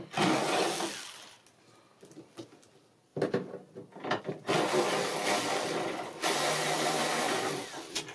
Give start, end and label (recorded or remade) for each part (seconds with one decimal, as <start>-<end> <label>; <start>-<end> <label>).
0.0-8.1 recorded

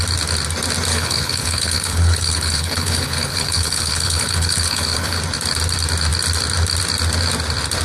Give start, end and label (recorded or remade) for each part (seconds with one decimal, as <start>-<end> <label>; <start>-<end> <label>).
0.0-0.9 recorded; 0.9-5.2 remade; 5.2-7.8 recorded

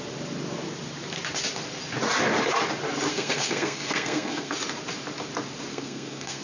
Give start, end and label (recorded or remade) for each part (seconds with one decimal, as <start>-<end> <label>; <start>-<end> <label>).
0.0-3.1 recorded; 3.1-4.5 remade; 4.5-5.7 recorded; 5.7-6.4 remade

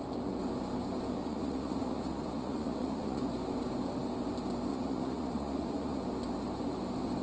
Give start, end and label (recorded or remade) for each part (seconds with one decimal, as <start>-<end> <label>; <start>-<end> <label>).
0.0-1.2 recorded; 1.2-3.2 remade; 3.2-4.7 recorded; 4.7-6.0 remade; 6.0-7.2 recorded

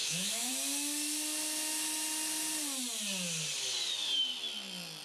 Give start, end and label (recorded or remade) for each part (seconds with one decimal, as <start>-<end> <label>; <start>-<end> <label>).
0.0-0.5 remade; 0.5-5.0 recorded

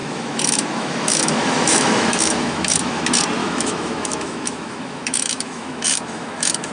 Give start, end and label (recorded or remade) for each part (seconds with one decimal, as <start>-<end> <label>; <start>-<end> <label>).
0.0-3.0 remade; 3.0-3.4 recorded; 3.4-6.7 remade

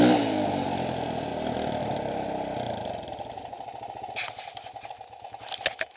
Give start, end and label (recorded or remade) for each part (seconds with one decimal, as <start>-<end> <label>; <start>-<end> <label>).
0.0-6.0 recorded